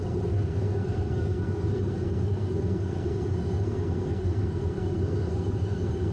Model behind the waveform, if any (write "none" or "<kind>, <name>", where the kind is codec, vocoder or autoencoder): codec, SNAC